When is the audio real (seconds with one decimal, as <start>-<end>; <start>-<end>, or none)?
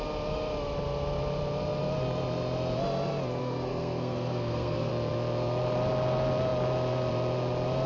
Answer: 0.0-3.4; 4.9-7.9